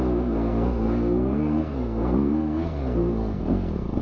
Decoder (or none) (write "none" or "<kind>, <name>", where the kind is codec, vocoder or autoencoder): codec, SNAC